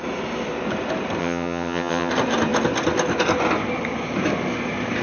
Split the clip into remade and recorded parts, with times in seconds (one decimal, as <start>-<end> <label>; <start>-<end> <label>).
0.0-1.2 recorded; 1.2-2.1 remade; 2.1-5.0 recorded